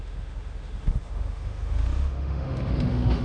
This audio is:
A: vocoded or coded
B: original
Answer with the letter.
A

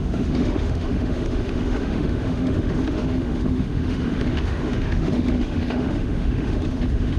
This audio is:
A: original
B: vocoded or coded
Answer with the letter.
B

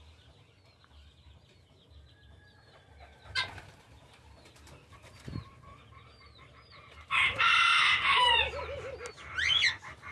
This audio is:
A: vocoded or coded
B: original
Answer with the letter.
B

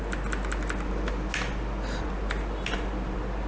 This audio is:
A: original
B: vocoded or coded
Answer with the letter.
A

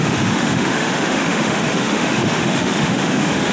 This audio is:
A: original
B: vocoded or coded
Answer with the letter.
B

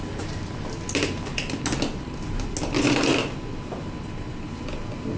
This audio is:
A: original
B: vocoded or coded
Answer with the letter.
A